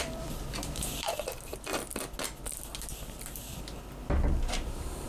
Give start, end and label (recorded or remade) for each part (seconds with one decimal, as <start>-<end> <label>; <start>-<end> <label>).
0.0-1.7 remade; 1.7-4.4 recorded; 4.4-5.1 remade